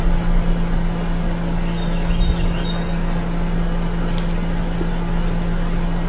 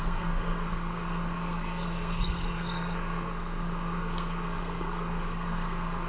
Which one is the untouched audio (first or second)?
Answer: first